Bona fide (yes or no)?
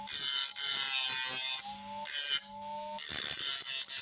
yes